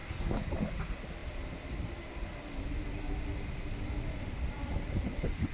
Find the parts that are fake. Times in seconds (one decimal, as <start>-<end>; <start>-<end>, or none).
none